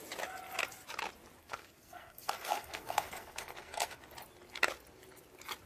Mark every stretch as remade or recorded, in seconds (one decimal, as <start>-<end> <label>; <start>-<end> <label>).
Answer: 0.0-1.4 recorded; 1.4-4.0 remade; 4.0-5.7 recorded